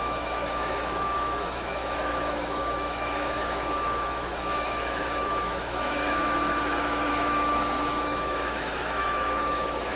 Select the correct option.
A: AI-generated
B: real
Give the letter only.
A